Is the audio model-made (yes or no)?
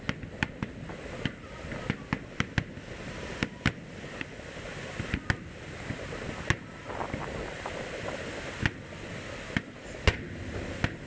no